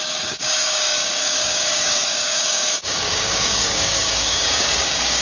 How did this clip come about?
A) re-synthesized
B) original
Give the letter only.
A